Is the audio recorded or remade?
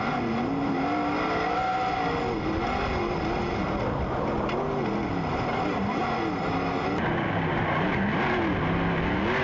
recorded